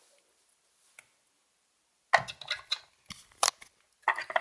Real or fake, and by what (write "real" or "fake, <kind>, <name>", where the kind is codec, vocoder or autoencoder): real